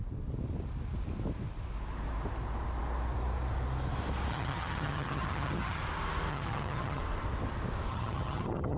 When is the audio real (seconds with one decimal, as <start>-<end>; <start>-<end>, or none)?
0.0-4.3; 5.8-6.3; 7.0-7.9